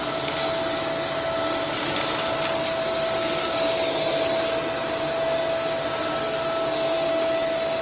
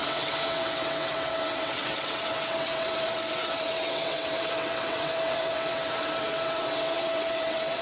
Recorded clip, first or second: first